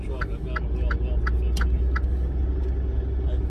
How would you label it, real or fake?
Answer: real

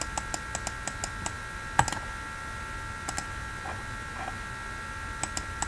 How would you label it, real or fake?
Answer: real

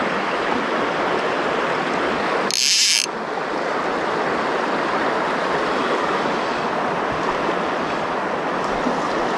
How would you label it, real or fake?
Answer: real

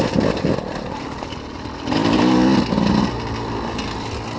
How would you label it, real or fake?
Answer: real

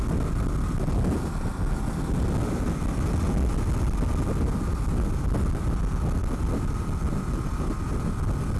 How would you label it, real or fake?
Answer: real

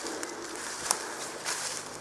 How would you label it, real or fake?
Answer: real